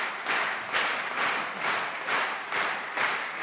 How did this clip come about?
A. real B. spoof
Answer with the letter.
B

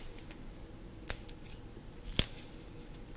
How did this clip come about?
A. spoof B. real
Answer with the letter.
B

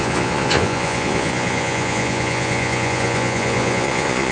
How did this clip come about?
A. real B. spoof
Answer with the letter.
B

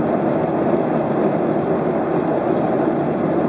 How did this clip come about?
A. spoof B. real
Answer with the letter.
B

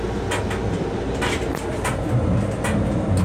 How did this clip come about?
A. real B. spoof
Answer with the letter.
A